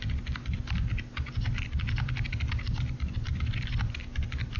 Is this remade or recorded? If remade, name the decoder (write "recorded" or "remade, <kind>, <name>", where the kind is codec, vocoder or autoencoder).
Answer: recorded